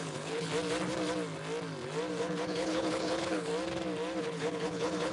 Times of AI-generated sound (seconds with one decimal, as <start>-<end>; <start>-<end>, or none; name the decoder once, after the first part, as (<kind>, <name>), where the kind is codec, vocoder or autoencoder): 0.0-0.5 (codec, HILCodec); 2.2-3.5; 4.2-5.1